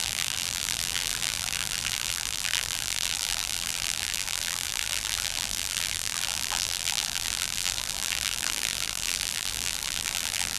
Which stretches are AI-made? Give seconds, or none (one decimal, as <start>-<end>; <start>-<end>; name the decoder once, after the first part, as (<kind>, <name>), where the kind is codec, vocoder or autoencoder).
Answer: 0.0-10.6 (vocoder, BigVGAN v2)